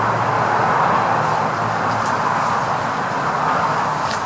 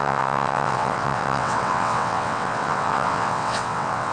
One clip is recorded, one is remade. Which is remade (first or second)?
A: second